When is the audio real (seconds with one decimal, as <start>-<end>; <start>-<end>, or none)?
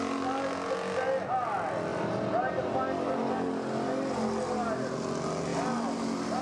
0.0-1.9; 2.5-5.5